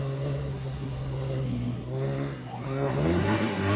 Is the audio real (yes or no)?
no